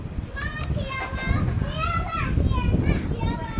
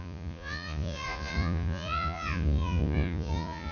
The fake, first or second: second